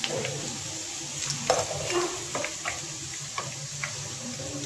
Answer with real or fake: real